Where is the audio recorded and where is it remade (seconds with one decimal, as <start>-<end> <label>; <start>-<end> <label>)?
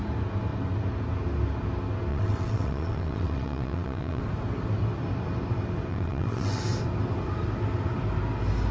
0.0-2.1 recorded; 2.1-4.2 remade; 4.2-5.9 recorded; 5.9-6.6 remade; 6.6-8.7 recorded